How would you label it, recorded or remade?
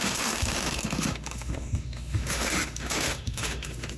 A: remade